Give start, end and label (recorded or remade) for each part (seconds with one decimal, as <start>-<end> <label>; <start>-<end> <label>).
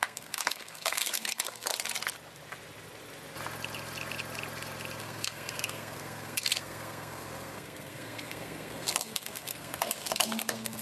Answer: 0.0-1.7 remade; 1.7-5.0 recorded; 5.0-10.8 remade